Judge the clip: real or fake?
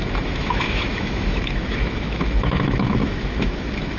fake